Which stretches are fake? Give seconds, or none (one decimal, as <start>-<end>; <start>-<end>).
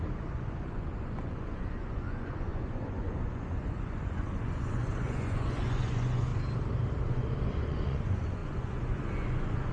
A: 0.0-6.3; 7.1-9.7